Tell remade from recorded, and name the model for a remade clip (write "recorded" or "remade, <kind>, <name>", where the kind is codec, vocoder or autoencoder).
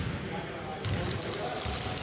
recorded